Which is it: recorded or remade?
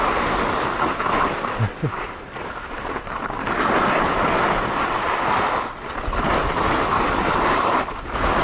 recorded